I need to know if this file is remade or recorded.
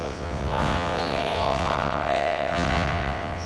remade